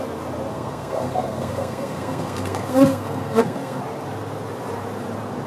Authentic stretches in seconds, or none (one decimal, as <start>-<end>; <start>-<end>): 0.0-0.5; 3.8-5.5